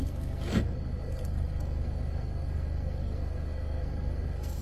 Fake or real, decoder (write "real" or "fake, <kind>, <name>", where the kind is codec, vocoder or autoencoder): fake, codec, SNAC